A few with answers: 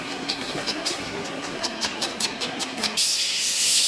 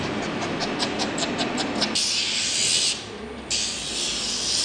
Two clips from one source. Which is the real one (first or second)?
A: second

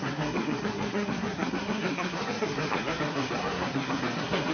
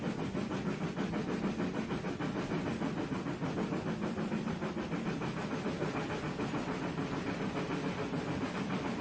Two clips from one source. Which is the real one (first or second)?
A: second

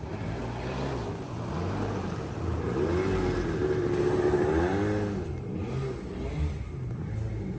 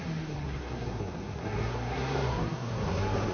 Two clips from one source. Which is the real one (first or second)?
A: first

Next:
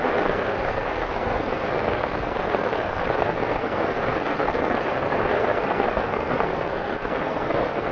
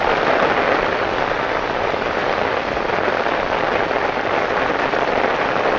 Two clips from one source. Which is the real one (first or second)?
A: second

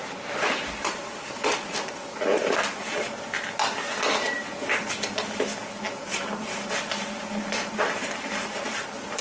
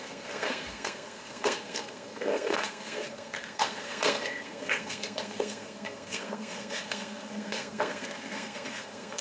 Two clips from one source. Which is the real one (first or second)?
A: first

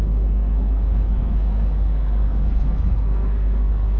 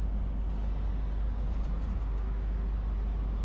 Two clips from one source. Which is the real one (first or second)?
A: second